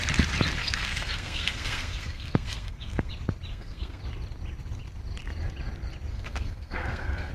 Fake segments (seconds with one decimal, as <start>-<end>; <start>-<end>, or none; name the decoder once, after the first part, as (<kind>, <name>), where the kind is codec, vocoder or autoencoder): 0.6-3.1 (codec, SNAC); 3.5-4.0; 6.1-7.3